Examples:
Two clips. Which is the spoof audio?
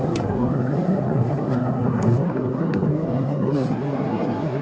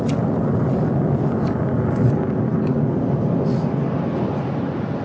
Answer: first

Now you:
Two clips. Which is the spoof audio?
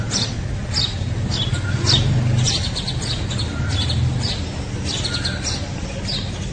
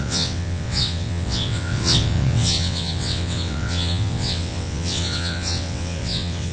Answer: second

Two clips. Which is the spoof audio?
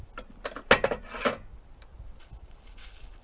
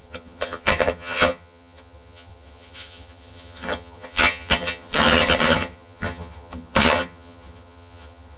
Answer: second